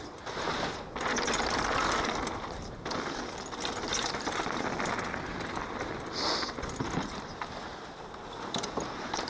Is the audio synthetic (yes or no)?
no